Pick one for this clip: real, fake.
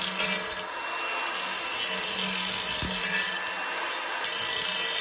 real